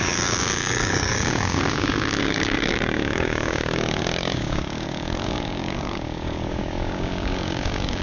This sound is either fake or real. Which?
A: fake